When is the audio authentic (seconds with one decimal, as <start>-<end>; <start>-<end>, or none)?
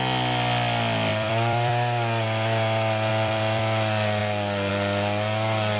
0.0-1.1; 1.7-3.1; 3.6-5.8